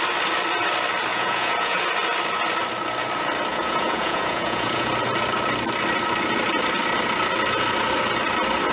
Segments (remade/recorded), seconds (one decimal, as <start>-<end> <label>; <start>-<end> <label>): 0.0-1.1 recorded; 1.1-1.8 remade; 1.8-3.5 recorded; 3.5-4.9 remade; 4.9-8.7 recorded